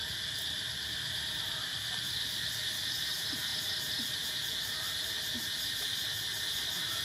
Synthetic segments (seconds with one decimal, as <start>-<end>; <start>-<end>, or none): none